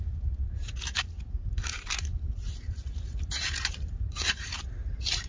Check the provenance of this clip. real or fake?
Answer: fake